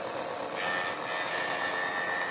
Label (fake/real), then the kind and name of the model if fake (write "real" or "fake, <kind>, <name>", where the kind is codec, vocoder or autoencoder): real